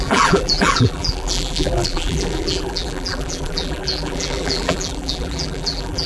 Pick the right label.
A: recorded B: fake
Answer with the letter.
B